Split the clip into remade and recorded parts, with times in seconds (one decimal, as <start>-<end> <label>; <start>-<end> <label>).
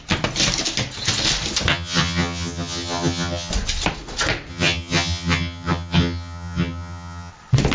0.0-1.7 recorded; 1.7-3.5 remade; 3.5-4.5 recorded; 4.5-7.3 remade; 7.3-7.7 recorded